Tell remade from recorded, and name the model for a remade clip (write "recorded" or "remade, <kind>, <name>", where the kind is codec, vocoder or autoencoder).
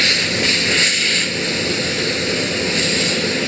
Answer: recorded